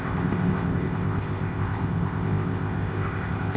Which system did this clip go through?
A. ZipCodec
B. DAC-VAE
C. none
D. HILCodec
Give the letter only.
A